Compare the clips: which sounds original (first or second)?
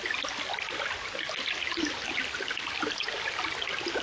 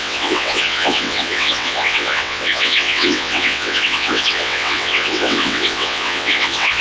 first